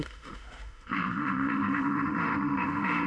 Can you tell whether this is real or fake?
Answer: fake